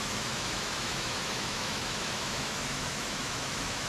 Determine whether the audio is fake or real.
fake